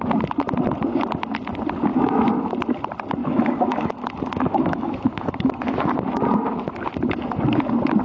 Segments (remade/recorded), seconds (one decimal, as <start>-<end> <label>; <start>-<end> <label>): 0.0-1.9 recorded; 1.9-2.5 remade; 2.5-3.2 recorded; 3.2-6.2 remade; 6.2-8.0 recorded